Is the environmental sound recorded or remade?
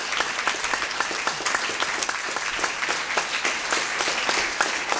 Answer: recorded